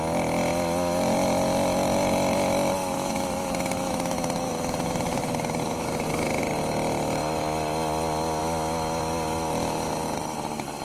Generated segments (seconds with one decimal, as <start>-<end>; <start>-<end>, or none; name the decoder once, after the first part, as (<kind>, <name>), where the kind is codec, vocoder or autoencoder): 2.8-6.4 (autoencoder, DAC-VAE); 8.4-9.0